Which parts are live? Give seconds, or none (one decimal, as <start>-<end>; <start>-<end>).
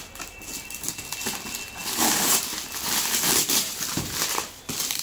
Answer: 0.0-1.8